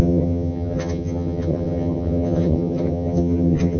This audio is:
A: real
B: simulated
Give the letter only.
B